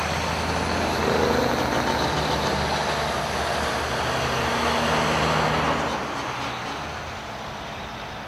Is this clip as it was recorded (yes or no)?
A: yes